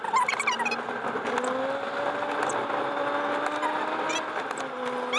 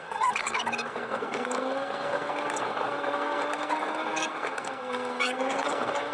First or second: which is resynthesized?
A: second